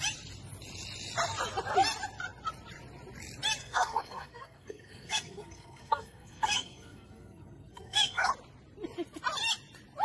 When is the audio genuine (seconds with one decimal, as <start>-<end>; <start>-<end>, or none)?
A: 0.0-3.6; 8.3-10.0